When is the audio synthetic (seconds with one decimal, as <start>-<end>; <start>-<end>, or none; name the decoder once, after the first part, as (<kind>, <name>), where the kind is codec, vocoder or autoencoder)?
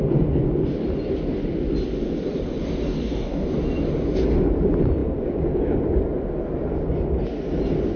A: 2.9-3.5 (codec, DAC)